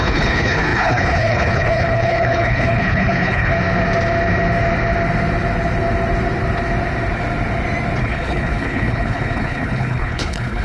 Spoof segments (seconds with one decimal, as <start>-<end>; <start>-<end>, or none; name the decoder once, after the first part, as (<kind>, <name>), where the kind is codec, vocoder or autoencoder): 0.0-3.5 (codec, HILCodec); 8.0-10.6